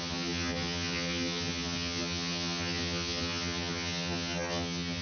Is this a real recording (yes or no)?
no